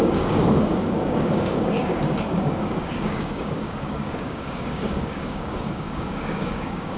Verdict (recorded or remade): remade